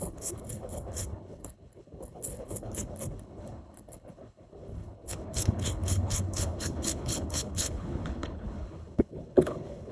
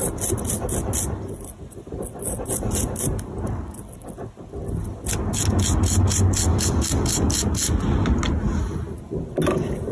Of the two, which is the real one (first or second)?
second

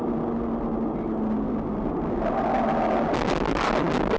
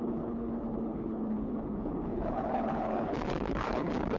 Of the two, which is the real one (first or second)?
first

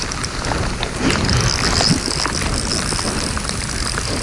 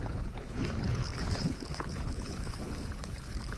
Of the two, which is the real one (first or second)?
first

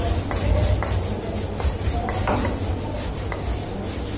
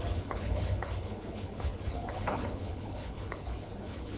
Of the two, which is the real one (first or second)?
first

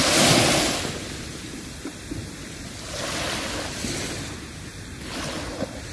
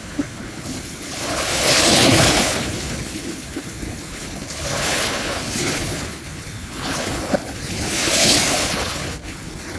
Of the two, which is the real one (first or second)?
first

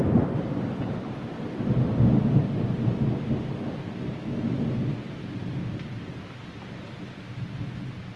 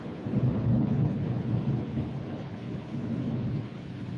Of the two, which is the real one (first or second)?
first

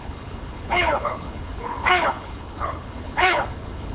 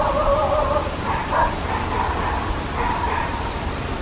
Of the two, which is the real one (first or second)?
second